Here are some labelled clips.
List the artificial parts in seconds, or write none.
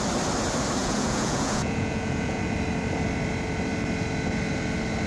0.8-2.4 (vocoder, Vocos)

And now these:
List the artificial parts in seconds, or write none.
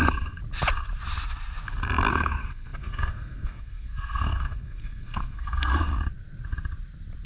0.0-0.4 (codec, SNAC); 2.1-5.9